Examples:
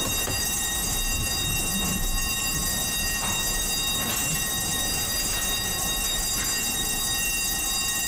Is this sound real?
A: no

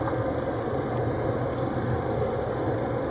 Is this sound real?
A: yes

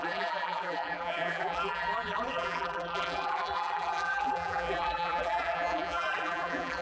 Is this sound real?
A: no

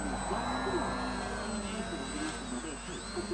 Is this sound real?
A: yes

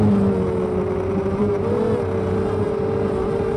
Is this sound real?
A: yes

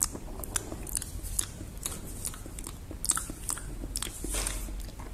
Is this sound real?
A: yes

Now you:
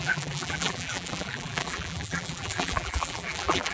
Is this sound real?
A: no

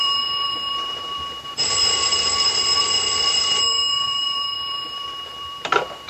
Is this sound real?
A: no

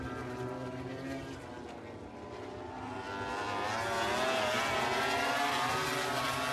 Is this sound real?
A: yes